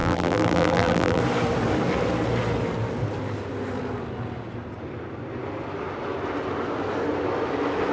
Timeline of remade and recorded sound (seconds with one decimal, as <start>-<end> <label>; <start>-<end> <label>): 0.0-1.2 remade; 1.2-7.9 recorded

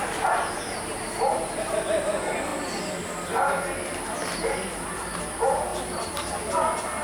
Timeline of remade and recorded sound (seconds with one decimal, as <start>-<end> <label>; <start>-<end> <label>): 0.0-5.7 recorded; 5.7-6.3 remade; 6.3-7.0 recorded

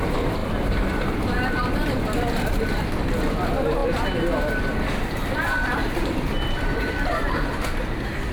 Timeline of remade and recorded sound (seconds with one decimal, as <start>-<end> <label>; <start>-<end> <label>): 0.0-0.4 recorded; 0.4-2.8 remade; 2.8-3.8 recorded; 3.8-7.3 remade; 7.3-8.3 recorded

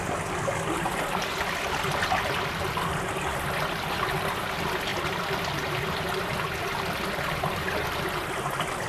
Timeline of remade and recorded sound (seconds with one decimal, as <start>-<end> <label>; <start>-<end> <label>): 0.0-8.9 recorded